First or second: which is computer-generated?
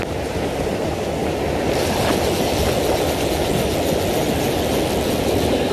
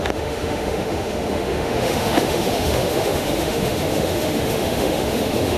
second